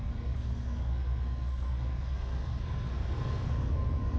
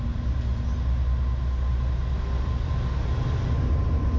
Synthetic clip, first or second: first